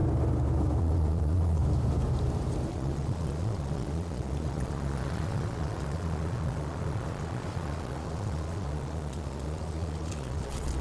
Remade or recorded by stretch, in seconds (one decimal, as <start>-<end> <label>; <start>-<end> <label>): 0.0-0.8 recorded; 0.8-1.6 remade; 1.6-2.7 recorded; 2.7-10.8 remade